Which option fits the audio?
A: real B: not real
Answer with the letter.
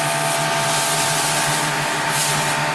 A